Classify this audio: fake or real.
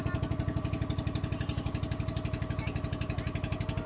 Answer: real